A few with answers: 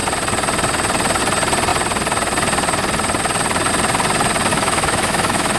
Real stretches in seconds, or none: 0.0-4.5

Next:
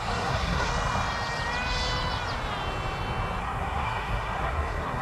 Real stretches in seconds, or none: 0.7-3.4

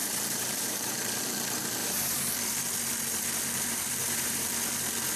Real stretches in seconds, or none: 0.9-1.8; 2.3-4.0; 4.5-5.2